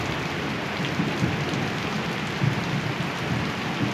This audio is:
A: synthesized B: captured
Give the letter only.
B